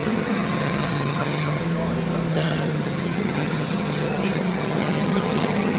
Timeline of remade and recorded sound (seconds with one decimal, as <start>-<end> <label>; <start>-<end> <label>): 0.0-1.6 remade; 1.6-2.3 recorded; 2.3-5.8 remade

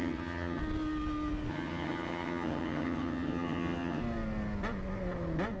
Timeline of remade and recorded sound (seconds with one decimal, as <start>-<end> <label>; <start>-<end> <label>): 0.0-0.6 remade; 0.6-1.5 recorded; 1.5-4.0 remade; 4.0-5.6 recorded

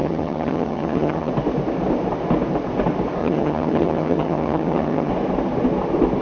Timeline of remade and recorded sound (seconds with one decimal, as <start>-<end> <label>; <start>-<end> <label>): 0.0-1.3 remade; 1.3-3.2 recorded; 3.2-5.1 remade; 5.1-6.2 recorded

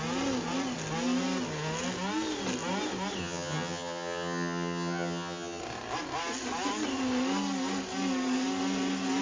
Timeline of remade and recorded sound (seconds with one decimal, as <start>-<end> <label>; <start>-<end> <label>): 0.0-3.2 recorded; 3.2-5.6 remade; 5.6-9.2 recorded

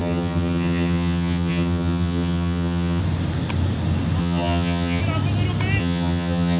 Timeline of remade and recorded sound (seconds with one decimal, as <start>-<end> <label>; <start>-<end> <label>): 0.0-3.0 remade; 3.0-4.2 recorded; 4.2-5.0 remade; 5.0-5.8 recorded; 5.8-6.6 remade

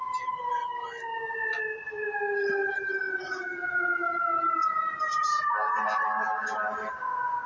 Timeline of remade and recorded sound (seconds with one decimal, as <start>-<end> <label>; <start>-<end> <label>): 0.0-7.5 recorded

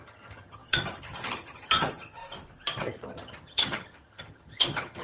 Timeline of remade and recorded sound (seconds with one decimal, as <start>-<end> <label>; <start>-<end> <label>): 0.0-2.2 remade; 2.2-2.8 recorded; 2.8-5.0 remade